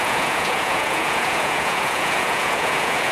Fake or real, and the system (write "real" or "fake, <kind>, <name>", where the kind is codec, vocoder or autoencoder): fake, vocoder, Vocos